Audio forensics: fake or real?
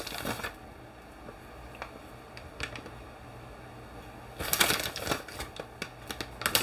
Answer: real